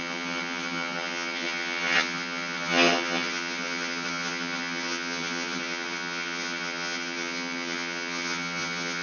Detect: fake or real fake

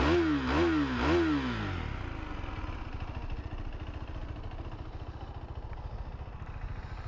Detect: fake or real real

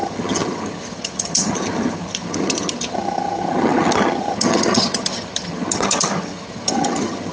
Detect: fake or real fake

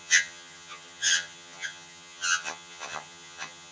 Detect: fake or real fake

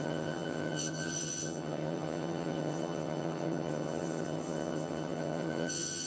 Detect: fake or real fake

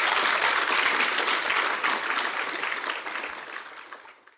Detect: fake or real real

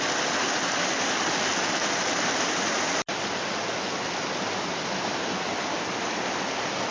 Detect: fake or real real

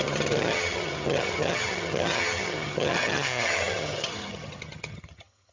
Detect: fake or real fake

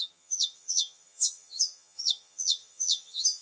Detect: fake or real fake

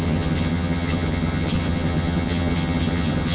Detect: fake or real fake